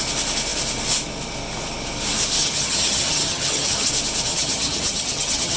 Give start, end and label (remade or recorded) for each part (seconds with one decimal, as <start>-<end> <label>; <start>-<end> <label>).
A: 0.0-2.4 recorded; 2.4-3.9 remade; 3.9-4.3 recorded; 4.3-5.6 remade